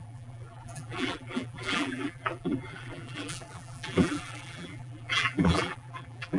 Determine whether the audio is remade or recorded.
remade